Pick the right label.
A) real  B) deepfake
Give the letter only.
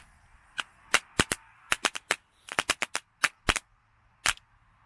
A